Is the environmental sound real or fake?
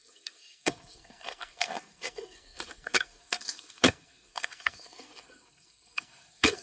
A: fake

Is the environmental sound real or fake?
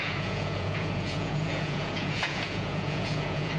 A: fake